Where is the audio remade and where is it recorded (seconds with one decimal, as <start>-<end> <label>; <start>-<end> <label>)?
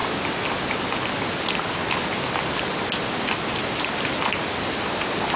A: 0.0-5.4 recorded